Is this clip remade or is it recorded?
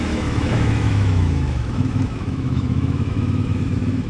remade